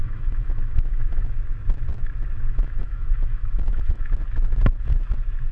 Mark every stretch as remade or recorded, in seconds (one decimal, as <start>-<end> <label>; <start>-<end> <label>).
0.0-1.4 remade; 1.4-2.5 recorded; 2.5-4.0 remade; 4.0-5.5 recorded